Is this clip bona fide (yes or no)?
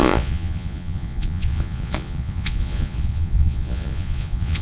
no